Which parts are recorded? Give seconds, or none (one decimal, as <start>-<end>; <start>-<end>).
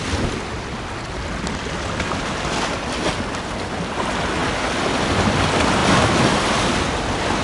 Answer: 0.0-5.8; 6.7-7.4